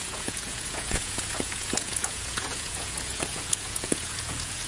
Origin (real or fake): fake